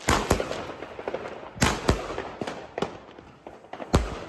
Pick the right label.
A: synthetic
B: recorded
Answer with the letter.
B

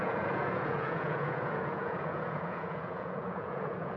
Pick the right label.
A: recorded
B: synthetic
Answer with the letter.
B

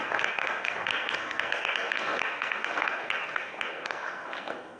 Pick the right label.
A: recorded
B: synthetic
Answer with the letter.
B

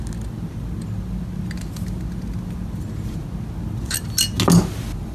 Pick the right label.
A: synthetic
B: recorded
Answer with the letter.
B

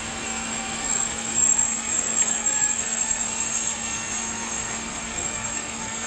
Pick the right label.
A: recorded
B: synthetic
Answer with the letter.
B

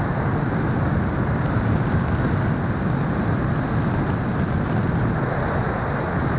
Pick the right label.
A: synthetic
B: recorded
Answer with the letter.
B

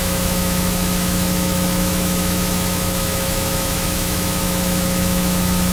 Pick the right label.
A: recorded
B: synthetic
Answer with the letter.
B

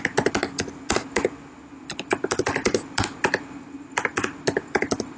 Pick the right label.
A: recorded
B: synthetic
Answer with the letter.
A